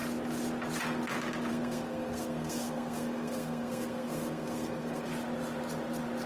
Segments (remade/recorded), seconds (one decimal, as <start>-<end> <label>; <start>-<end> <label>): 0.0-1.5 recorded; 1.5-5.1 remade; 5.1-6.3 recorded